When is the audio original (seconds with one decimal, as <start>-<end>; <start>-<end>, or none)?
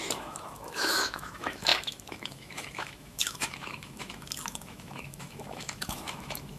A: none